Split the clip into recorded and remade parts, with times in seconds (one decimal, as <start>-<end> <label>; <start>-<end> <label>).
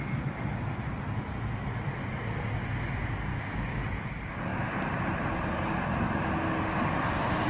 0.0-7.5 recorded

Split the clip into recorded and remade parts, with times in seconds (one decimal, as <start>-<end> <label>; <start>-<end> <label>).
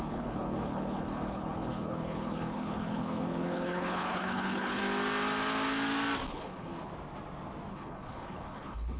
0.0-4.8 remade; 4.8-6.3 recorded; 6.3-6.9 remade; 6.9-7.7 recorded; 7.7-9.0 remade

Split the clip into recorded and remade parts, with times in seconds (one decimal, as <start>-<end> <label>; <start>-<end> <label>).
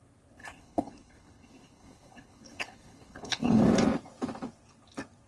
0.0-0.4 recorded; 0.4-3.6 remade; 3.6-5.3 recorded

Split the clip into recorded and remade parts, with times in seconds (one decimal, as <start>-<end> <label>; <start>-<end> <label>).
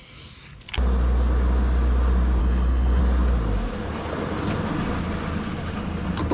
0.0-2.4 recorded; 2.4-3.0 remade; 3.0-6.3 recorded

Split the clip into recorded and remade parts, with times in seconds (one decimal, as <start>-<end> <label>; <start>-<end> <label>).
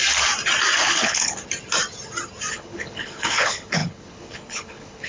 0.0-0.8 recorded; 0.8-1.4 remade; 1.4-2.5 recorded; 2.5-5.1 remade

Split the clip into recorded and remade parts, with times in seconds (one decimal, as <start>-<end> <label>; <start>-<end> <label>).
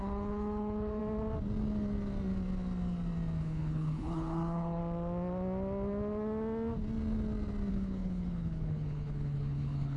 0.0-1.0 remade; 1.0-3.4 recorded; 3.4-4.8 remade; 4.8-7.7 recorded; 7.7-10.0 remade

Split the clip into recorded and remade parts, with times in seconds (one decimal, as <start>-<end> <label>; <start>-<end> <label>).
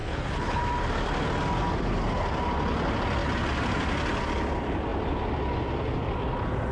0.0-0.6 remade; 0.6-6.7 recorded